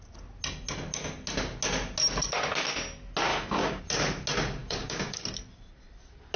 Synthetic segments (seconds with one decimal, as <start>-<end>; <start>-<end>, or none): 3.3-3.8; 4.6-5.2